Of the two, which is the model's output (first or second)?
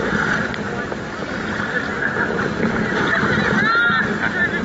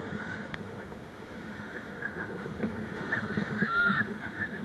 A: second